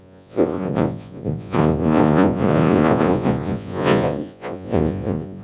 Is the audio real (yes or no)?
no